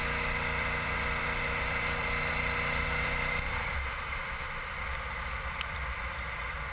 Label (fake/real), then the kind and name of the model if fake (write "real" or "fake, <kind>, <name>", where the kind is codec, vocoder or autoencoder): fake, vocoder, BigVGAN v2